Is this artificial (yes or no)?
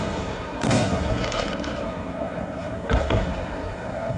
yes